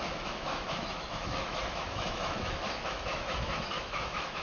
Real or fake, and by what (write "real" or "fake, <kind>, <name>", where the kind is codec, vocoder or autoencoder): fake, autoencoder, DAC-VAE